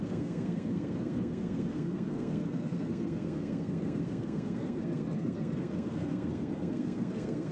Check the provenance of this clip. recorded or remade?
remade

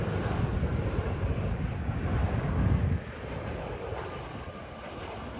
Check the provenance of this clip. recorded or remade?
recorded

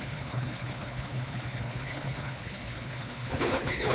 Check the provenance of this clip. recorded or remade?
remade